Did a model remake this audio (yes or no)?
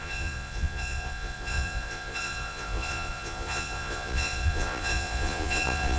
yes